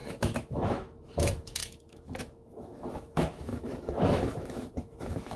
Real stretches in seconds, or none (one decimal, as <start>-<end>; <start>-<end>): none